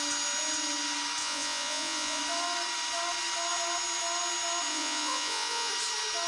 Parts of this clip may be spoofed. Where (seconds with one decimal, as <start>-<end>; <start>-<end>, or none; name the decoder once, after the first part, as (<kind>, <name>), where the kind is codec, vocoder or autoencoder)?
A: 1.2-2.2 (vocoder, Vocos); 4.7-5.7